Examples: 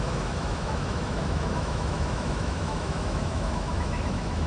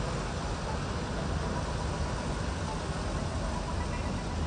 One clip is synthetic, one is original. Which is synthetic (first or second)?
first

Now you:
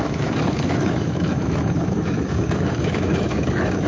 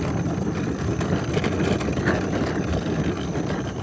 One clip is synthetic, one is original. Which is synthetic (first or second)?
first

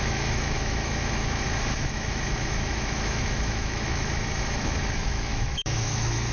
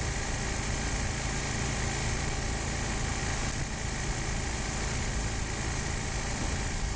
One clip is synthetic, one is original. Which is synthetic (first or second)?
first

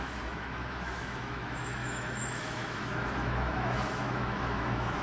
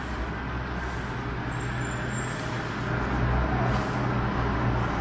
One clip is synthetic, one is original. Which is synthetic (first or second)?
first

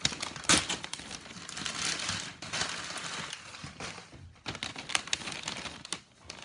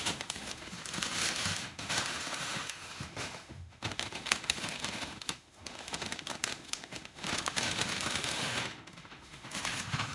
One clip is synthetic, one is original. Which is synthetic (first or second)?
second